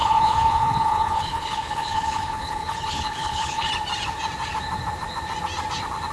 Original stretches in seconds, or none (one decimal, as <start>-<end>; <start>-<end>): 3.7-6.1